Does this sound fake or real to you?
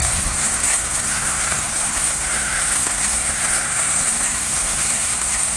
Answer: fake